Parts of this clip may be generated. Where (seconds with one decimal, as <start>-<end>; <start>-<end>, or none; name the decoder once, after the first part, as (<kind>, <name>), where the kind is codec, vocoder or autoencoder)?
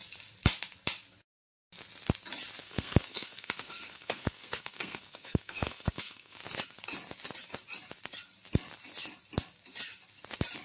2.6-6.4 (codec, SNAC)